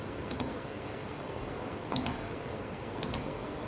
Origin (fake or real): fake